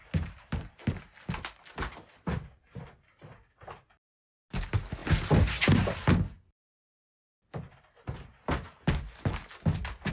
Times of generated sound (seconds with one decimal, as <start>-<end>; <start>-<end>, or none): none